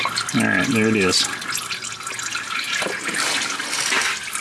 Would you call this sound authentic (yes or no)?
yes